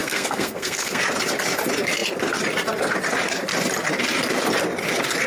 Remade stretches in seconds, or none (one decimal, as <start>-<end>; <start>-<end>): 0.0-1.0